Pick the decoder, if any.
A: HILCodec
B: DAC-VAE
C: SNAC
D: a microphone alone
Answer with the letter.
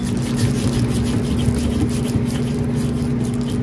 D